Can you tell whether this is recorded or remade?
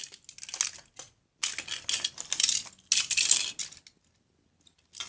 recorded